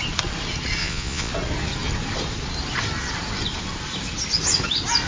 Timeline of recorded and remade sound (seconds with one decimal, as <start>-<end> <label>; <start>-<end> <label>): 0.0-0.8 recorded; 0.8-1.3 remade; 1.3-5.1 recorded